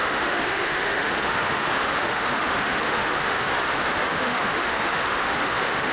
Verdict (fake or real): fake